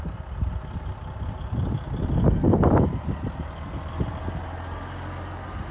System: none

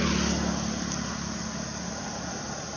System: none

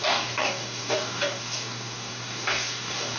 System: codec, DAC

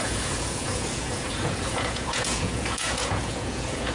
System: vocoder, Vocos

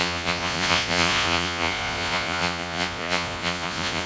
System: vocoder, Vocos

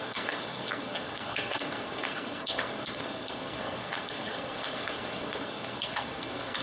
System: codec, SNAC